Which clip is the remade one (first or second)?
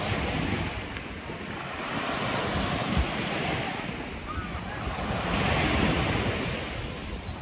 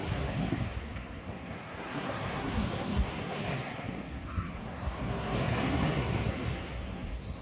second